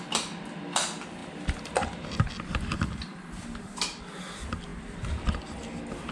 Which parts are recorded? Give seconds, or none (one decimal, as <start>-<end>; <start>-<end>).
0.0-1.2; 4.0-4.7; 5.4-6.1